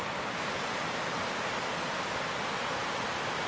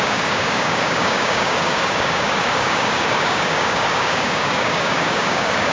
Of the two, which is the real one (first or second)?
first